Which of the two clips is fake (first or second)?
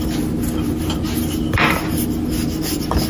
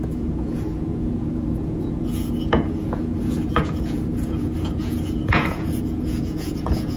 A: second